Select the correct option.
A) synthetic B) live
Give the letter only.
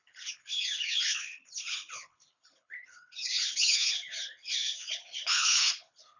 A